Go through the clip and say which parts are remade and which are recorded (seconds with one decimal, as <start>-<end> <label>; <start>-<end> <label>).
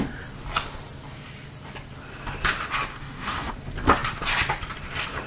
0.0-2.9 recorded; 2.9-3.5 remade; 3.5-5.3 recorded